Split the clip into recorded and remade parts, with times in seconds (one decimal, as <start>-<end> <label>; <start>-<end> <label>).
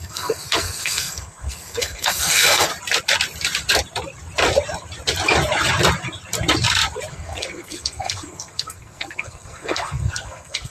0.0-2.7 remade; 2.7-7.1 recorded; 7.1-10.7 remade